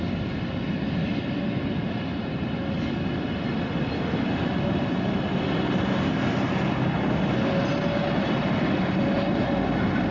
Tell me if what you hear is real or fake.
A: real